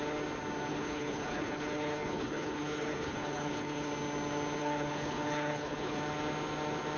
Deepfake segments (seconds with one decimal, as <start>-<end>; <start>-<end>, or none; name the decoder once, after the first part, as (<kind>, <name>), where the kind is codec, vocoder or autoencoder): 0.7-3.9 (codec, HILCodec); 4.6-6.0